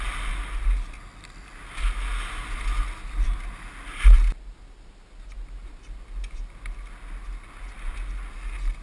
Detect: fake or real real